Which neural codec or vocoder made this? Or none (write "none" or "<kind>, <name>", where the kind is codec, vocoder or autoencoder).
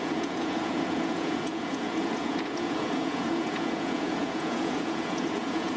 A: vocoder, Vocos